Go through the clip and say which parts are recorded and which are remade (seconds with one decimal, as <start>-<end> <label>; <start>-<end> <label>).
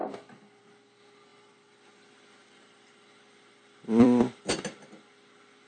0.0-1.3 recorded; 1.3-4.5 remade; 4.5-5.7 recorded